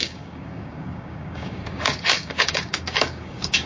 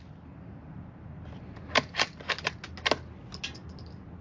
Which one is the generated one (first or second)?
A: first